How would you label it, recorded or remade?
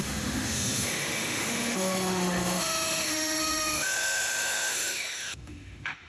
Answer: remade